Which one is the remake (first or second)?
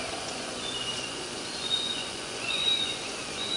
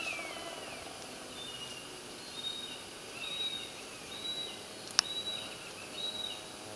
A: first